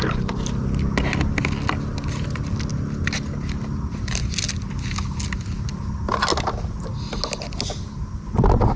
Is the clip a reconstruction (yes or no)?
no